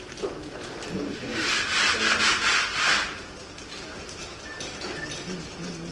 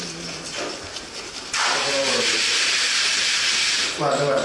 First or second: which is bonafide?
first